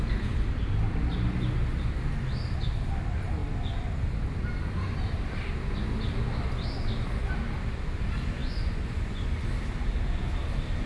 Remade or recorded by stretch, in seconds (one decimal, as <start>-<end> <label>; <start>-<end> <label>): 0.0-8.4 recorded; 8.4-9.4 remade; 9.4-10.9 recorded